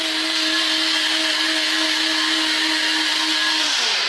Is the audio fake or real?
real